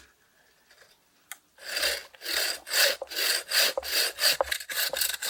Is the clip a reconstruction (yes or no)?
no